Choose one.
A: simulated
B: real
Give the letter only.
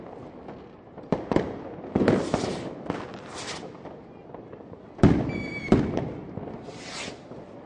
B